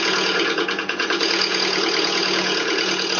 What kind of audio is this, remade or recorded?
remade